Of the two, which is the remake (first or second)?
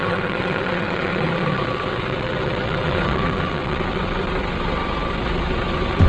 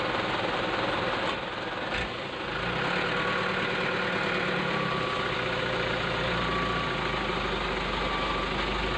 first